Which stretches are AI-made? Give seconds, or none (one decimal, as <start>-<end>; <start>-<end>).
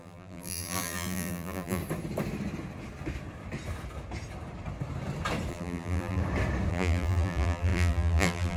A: 0.0-1.8; 5.5-6.2; 6.7-8.6